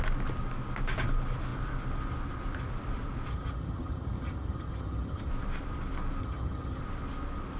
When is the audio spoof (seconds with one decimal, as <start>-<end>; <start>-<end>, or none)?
3.3-5.3; 6.2-6.8